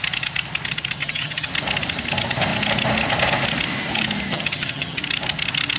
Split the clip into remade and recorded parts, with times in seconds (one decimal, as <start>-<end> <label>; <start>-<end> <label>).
0.0-1.0 recorded; 1.0-1.5 remade; 1.5-4.3 recorded; 4.3-5.0 remade; 5.0-5.8 recorded